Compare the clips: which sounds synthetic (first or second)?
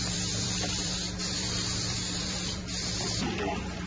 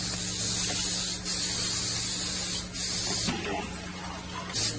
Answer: first